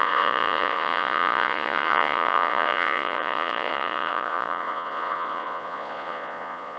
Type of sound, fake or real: fake